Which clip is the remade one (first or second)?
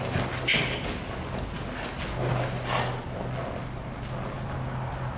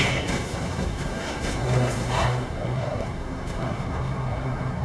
second